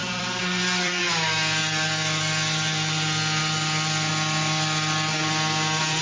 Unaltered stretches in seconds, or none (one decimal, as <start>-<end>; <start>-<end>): 1.0-1.6; 2.2-3.4; 4.1-6.0